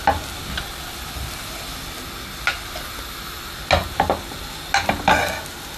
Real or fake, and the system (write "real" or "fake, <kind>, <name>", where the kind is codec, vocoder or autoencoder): real